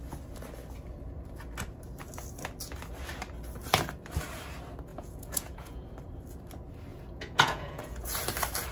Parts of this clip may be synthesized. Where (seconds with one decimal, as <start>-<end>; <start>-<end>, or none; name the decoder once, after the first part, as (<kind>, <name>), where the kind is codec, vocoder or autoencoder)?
4.9-5.9 (vocoder, Vocos); 6.9-8.2